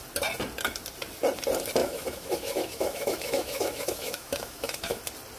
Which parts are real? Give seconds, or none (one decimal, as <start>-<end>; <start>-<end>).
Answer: 0.0-1.8; 5.0-5.4